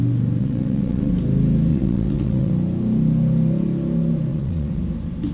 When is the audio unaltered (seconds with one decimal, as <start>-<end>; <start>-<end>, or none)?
0.0-0.4; 1.1-1.7; 2.5-4.3; 4.8-5.3